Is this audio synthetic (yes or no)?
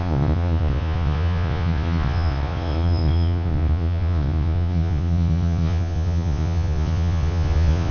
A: yes